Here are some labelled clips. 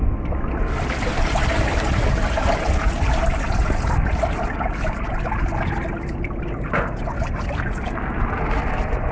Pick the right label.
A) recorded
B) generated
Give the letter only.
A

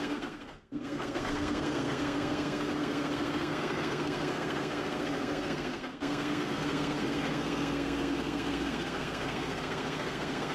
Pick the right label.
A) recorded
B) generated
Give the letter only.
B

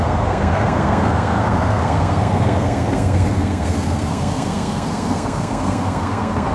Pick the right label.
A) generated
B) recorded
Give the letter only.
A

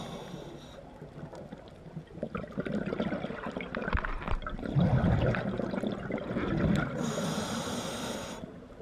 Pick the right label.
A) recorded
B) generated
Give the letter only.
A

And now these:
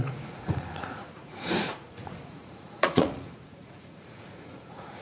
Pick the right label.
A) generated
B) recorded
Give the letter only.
A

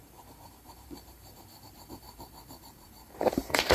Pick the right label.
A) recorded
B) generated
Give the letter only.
B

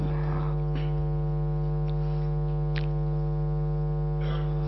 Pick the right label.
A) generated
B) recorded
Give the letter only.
B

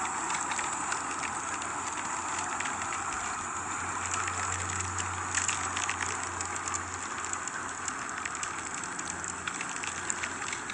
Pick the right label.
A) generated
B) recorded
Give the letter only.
B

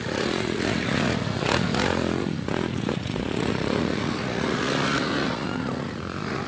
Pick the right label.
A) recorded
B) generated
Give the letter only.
B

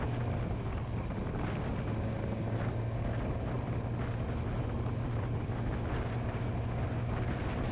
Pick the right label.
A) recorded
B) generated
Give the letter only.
A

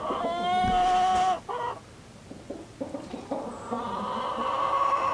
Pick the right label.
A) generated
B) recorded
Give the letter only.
B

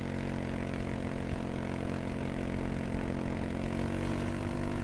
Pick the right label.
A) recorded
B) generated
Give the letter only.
B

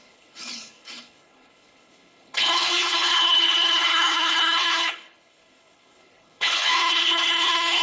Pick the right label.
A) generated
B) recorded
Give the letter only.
A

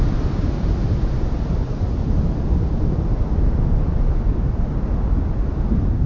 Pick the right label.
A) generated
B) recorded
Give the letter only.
B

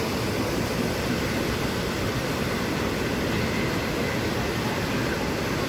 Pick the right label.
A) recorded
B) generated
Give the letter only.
A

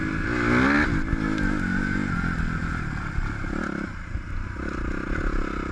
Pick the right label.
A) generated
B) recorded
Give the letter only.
B